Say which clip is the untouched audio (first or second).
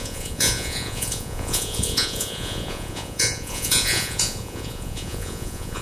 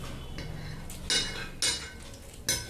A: second